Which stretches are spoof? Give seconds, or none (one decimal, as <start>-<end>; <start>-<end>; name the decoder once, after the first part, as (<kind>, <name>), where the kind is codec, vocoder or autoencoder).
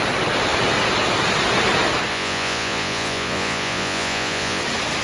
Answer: 2.1-4.6 (vocoder, Vocos)